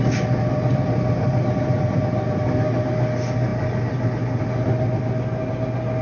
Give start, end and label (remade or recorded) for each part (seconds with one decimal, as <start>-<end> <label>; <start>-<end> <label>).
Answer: 0.0-6.0 recorded